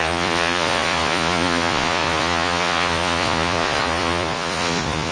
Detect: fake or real fake